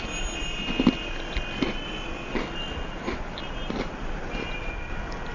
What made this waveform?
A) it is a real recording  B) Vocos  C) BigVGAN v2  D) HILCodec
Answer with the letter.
A